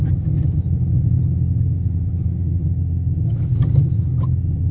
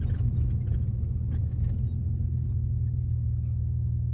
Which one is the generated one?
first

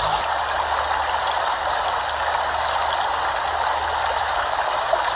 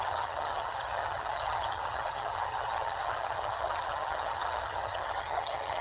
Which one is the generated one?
second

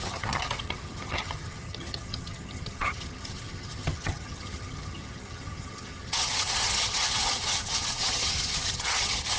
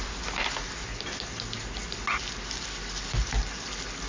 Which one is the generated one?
first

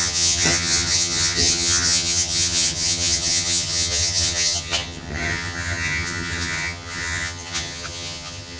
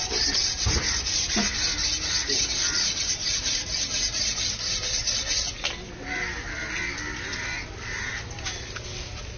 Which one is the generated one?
first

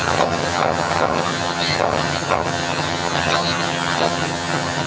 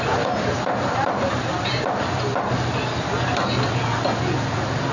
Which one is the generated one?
first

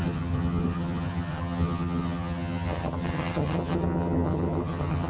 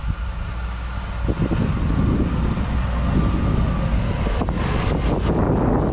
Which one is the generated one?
first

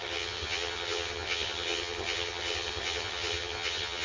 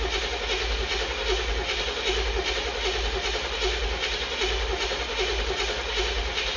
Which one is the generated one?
first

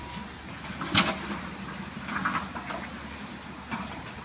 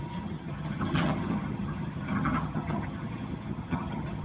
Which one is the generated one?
second